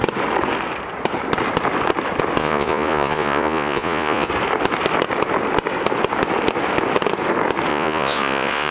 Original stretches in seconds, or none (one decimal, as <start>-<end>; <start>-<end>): 0.0-2.4; 4.3-7.7